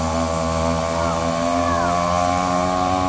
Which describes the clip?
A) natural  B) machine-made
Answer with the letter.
A